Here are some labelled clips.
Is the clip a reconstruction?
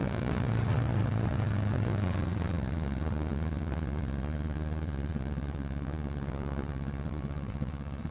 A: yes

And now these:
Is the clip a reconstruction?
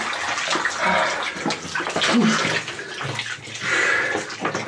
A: no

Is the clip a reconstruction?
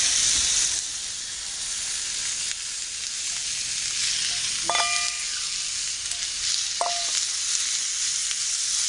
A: no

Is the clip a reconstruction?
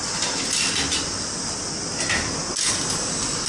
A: no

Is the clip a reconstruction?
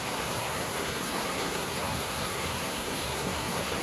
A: yes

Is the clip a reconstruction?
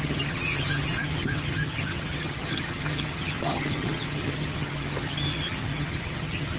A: yes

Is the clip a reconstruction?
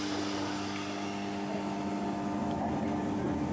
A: no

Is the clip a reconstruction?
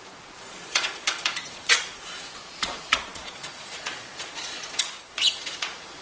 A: yes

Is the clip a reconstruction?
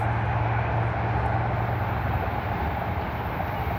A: no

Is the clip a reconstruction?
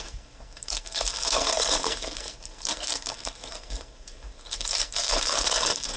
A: yes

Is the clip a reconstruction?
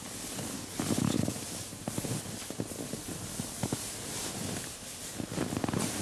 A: no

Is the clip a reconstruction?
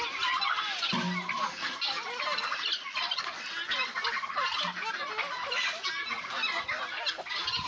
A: no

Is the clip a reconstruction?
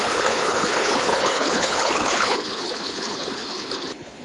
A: yes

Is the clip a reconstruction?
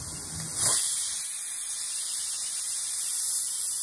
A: no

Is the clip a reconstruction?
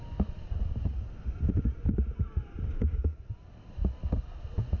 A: no